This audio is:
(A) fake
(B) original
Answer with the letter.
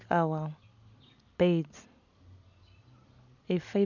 B